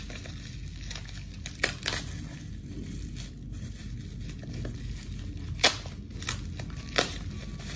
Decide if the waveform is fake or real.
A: real